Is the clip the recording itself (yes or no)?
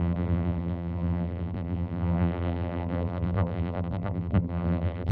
no